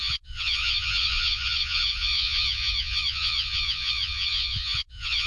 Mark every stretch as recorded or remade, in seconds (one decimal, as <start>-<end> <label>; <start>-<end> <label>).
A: 0.0-5.3 remade